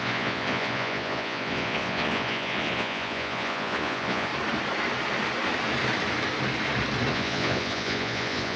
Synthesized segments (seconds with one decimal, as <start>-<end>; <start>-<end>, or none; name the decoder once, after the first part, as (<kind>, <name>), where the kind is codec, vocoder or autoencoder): 0.0-4.3 (vocoder, Vocos); 7.1-8.6